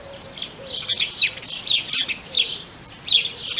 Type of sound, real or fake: real